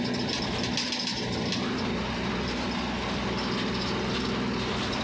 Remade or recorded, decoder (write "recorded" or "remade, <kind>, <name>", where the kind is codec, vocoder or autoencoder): recorded